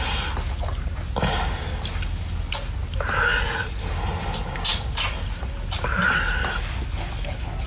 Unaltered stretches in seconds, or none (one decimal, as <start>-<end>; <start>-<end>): 0.0-3.3; 3.8-7.7